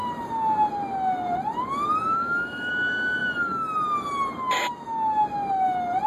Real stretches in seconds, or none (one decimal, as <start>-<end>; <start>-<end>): 0.0-2.1; 2.7-6.1